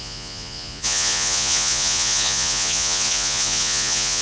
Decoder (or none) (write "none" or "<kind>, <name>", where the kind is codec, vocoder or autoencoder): vocoder, Vocos